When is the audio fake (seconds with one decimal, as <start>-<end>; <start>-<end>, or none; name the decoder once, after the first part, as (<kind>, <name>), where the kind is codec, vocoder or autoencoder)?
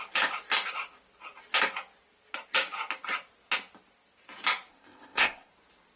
4.7-5.5 (codec, ZipCodec)